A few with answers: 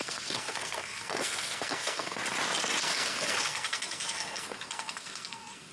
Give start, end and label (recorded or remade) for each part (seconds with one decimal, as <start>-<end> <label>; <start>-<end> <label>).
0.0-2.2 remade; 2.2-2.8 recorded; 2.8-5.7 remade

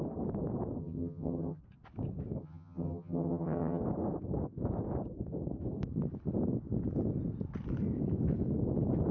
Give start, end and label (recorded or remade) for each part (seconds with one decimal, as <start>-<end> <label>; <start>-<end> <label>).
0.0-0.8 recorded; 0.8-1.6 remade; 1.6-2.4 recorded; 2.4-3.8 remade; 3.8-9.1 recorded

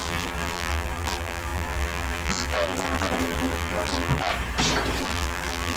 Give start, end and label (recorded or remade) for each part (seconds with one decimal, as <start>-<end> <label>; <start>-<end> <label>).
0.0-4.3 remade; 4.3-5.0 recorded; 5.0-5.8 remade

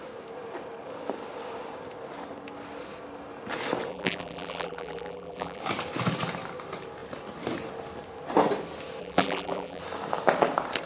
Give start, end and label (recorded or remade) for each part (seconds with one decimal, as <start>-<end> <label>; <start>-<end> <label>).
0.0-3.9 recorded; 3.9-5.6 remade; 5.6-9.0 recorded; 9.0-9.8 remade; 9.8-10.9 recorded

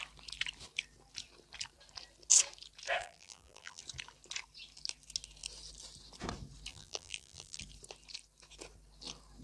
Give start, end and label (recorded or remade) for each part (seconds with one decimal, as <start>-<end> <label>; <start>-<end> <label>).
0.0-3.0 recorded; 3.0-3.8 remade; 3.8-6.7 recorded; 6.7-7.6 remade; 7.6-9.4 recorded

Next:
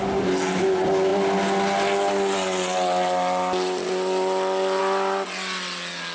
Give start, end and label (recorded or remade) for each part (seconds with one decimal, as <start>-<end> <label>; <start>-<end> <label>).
0.0-6.1 recorded